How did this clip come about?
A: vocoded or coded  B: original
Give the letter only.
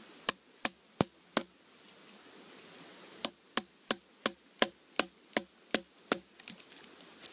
B